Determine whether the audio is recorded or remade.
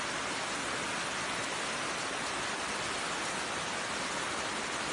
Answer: recorded